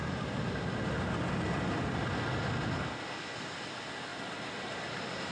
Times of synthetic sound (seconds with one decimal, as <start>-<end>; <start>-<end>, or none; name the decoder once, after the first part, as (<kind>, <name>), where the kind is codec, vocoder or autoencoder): none